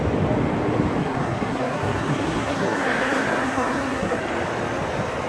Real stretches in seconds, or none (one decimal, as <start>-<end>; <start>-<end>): 0.0-1.0; 4.2-5.3